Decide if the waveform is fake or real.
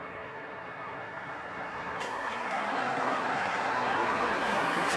fake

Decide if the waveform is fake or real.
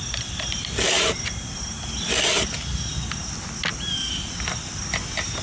real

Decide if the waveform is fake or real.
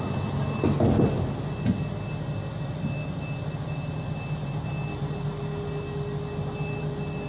real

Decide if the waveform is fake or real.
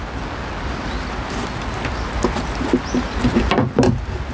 real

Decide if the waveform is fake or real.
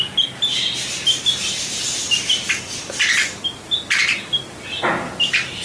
real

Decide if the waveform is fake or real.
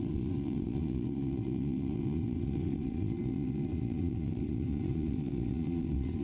fake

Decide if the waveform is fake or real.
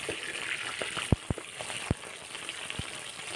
fake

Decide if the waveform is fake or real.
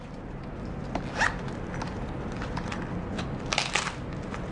real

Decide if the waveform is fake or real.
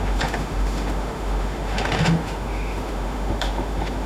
fake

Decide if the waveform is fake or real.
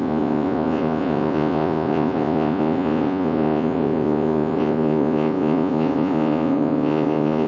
fake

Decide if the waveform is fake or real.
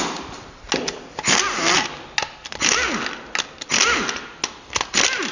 real